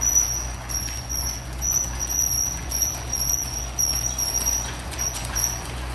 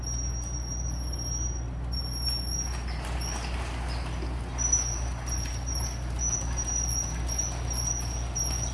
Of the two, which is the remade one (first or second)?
first